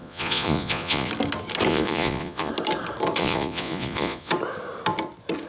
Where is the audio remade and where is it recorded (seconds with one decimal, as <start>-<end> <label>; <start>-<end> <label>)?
0.0-1.1 remade; 1.1-1.7 recorded; 1.7-2.5 remade; 2.5-3.2 recorded; 3.2-4.3 remade; 4.3-5.5 recorded